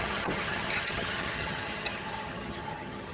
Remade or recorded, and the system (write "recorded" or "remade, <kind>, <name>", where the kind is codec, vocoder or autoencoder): remade, vocoder, HiFi-GAN